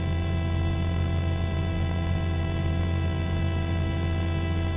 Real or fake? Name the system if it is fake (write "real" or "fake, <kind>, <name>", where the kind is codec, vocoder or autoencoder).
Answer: fake, vocoder, BigVGAN v2